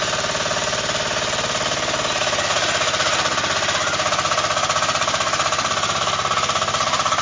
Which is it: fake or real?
real